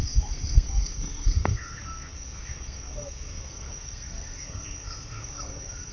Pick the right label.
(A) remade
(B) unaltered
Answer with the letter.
A